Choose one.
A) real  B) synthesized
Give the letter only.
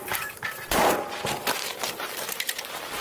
B